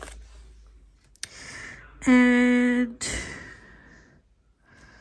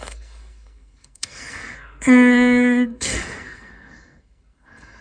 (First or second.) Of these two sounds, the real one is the first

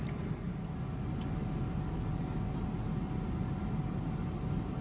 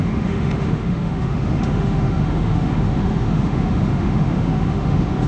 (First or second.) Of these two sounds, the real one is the first